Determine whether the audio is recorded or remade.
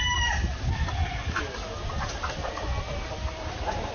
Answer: recorded